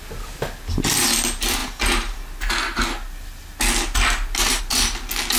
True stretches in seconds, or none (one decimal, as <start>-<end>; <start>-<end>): 0.0-5.4